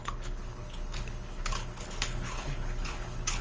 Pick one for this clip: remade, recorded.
remade